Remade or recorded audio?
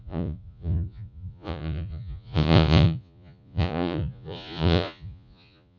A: remade